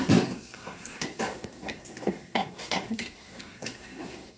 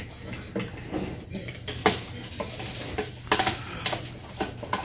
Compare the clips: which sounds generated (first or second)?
first